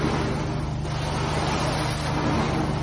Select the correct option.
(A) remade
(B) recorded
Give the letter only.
B